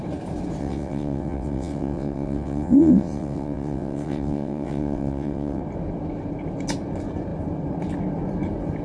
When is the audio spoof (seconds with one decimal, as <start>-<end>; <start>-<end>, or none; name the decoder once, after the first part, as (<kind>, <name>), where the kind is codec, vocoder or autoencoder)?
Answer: 0.6-5.6 (vocoder, WaveNeXt)